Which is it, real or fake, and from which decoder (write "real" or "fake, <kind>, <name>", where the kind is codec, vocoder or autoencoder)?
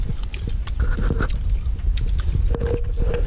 real